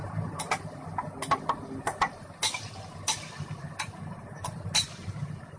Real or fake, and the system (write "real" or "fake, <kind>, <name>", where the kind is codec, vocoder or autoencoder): real